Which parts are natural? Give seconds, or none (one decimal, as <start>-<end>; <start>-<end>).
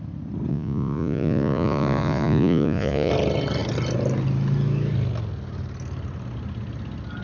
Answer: 0.0-0.5; 3.1-7.2